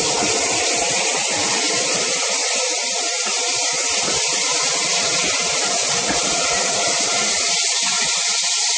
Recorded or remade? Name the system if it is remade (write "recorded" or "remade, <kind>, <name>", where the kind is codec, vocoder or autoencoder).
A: remade, vocoder, BigVGAN v2